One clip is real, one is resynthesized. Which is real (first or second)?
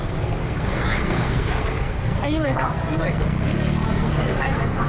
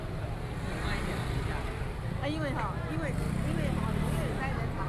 second